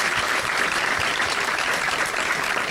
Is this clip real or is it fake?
fake